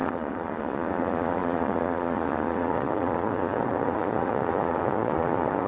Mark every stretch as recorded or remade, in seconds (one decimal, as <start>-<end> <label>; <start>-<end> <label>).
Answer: 0.0-5.7 remade